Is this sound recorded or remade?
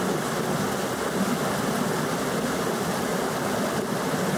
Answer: recorded